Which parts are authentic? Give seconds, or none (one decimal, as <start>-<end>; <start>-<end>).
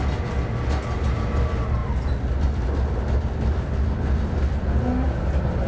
0.0-5.7